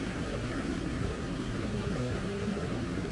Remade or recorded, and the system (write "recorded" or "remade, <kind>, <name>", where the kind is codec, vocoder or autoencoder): remade, codec, SNAC